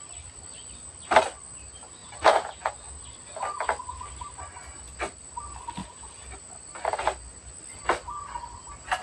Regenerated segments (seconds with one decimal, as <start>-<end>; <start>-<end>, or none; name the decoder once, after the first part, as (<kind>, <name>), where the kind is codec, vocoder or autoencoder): 2.0-3.0 (vocoder, Vocos); 5.8-6.3